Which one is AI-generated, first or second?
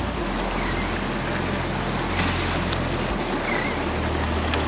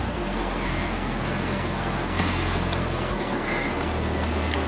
second